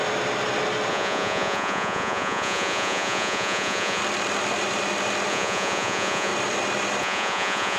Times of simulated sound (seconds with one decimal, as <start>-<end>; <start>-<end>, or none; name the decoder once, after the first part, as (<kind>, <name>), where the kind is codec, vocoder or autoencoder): 0.9-4.0 (vocoder, Vocos); 5.3-6.3; 7.0-7.8